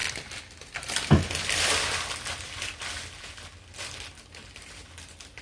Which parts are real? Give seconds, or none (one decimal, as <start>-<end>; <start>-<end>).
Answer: 0.0-5.4